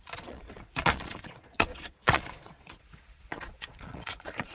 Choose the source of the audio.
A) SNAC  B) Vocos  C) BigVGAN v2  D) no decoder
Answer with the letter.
B